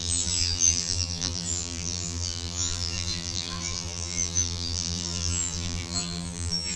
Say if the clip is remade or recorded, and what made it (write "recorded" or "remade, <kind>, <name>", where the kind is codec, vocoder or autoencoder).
remade, vocoder, BigVGAN v2